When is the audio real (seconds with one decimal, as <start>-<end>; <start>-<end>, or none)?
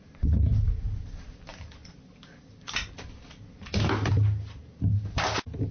0.0-5.7